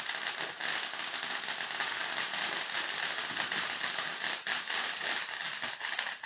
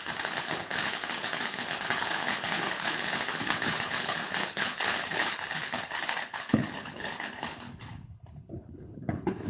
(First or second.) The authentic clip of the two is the first